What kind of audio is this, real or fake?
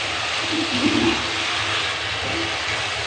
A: real